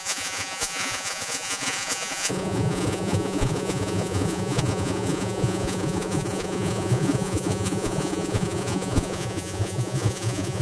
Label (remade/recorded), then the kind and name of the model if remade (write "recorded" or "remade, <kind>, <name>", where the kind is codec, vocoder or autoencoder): remade, vocoder, Vocos